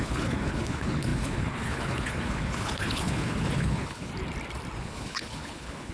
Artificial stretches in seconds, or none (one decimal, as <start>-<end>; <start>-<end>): 0.0-4.1; 4.8-5.9